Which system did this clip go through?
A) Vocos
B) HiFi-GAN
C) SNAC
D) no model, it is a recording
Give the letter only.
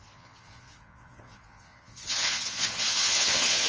A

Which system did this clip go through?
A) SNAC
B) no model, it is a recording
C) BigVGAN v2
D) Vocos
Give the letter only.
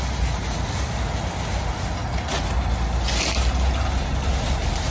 B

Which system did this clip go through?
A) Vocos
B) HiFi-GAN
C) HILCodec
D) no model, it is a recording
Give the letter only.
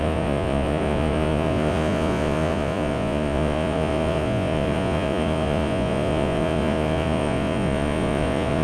A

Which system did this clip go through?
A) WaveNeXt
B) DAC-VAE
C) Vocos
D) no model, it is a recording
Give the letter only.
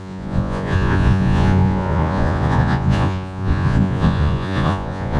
C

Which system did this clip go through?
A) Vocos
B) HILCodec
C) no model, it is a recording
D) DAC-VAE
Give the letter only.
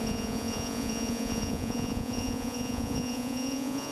A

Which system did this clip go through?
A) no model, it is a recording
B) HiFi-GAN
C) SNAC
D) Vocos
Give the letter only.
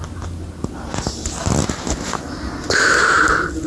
A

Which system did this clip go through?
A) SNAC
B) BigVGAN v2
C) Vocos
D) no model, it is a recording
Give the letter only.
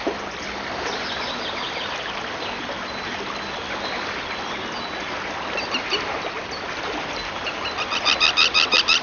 D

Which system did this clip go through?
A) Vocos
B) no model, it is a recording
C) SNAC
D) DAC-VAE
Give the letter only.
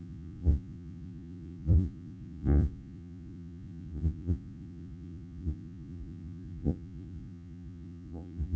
A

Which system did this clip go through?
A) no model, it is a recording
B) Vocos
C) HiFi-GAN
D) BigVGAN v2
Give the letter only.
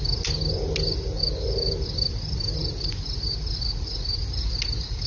A